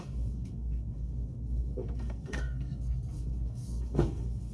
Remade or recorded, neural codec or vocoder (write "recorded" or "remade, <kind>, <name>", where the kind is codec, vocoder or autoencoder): remade, codec, SNAC